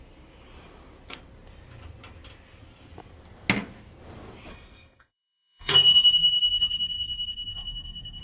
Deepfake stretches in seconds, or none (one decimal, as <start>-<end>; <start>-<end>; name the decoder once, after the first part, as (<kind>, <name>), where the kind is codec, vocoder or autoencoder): 4.5-8.2 (codec, SNAC)